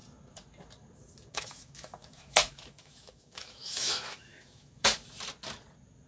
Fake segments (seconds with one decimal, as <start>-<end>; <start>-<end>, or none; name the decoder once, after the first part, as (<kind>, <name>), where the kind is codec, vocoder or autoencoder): 1.3-5.0 (autoencoder, DAC-VAE)